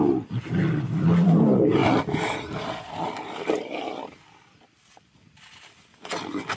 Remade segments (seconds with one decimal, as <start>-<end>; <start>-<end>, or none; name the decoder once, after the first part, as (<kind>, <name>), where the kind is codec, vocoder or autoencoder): none